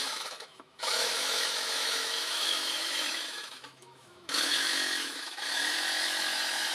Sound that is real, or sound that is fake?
fake